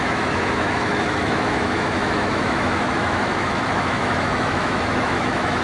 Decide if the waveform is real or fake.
fake